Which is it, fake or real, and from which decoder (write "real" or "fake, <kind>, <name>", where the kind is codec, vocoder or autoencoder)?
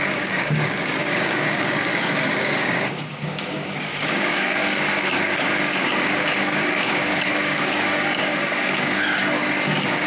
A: fake, codec, DAC